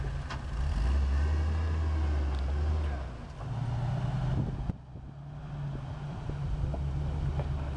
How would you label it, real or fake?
real